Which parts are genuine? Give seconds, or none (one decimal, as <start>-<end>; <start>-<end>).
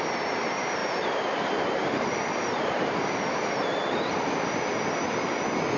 0.0-0.8; 4.3-5.8